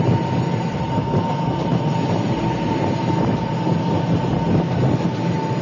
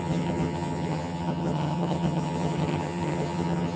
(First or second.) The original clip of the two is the first